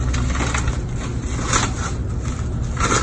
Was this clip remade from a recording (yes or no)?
no